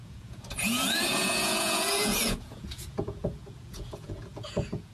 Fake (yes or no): yes